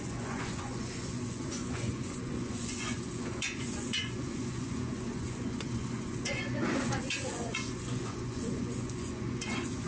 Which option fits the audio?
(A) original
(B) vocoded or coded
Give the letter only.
B